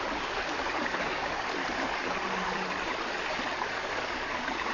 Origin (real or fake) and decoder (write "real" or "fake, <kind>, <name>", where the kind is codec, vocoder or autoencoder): fake, codec, DAC